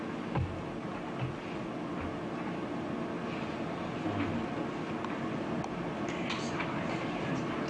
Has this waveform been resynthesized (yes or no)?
no